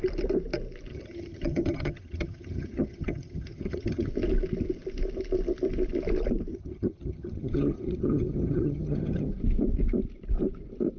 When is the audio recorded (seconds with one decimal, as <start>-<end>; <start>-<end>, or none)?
0.0-0.9; 4.1-6.5; 9.3-11.0